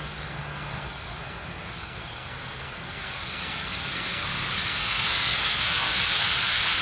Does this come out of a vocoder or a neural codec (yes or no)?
yes